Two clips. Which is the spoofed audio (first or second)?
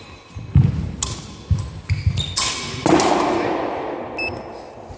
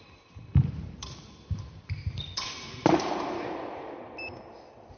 second